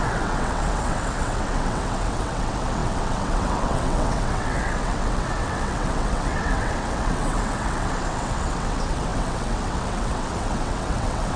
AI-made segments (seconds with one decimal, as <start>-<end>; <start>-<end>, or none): 0.0-11.4